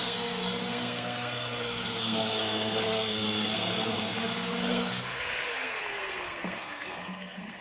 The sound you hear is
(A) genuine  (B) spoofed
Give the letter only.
B